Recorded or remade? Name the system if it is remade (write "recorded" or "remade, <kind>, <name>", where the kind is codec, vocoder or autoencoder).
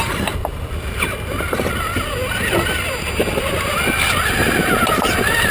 recorded